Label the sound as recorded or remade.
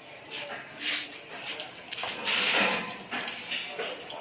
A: recorded